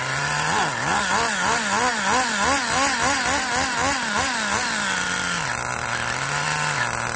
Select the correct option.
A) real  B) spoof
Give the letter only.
A